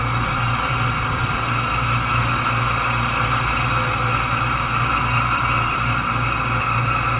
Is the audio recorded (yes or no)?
yes